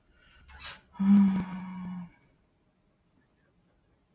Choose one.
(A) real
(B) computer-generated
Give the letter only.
A